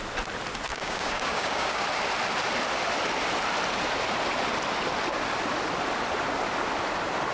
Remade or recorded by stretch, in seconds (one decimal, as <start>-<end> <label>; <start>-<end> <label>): 0.0-0.7 recorded; 0.7-1.8 remade; 1.8-7.3 recorded